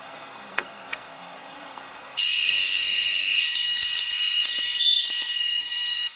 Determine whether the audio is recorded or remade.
remade